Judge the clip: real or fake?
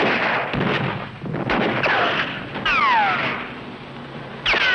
real